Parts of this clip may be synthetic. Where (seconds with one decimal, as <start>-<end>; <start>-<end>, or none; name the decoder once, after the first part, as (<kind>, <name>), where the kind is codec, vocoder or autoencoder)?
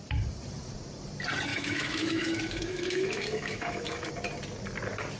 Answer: 1.5-4.1 (autoencoder, DAC-VAE)